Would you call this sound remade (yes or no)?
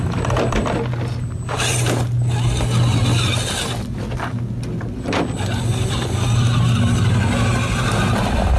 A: no